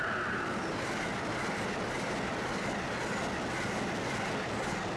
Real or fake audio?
real